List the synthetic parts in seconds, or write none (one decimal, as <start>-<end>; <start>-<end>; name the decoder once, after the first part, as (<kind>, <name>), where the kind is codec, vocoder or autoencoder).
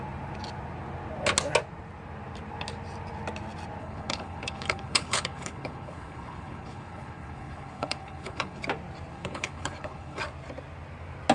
3.8-8.6 (codec, HILCodec); 9.1-10.2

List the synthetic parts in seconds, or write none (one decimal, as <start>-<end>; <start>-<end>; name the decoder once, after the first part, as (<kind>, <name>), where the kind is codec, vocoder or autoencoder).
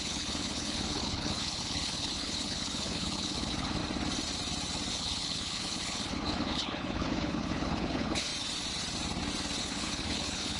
0.0-3.8 (codec, HILCodec); 4.9-8.3; 9.6-10.6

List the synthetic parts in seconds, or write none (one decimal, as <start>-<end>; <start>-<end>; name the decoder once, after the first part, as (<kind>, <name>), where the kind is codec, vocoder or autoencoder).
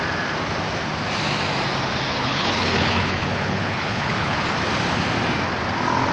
2.1-4.4 (codec, HILCodec)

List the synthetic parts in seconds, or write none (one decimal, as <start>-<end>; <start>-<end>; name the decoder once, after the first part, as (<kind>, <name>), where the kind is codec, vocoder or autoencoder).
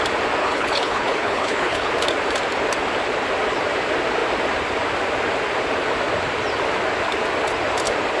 0.4-1.9 (codec, HILCodec)